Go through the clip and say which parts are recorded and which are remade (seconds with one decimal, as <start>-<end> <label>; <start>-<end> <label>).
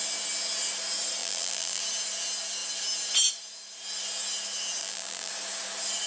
0.0-1.2 recorded; 1.2-1.8 remade; 1.8-4.8 recorded; 4.8-5.3 remade; 5.3-6.1 recorded